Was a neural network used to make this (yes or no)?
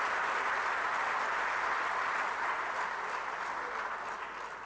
no